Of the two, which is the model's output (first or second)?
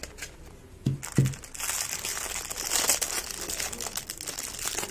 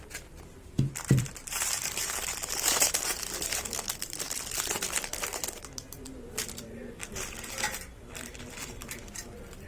second